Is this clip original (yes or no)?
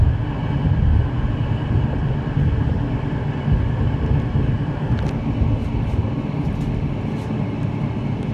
yes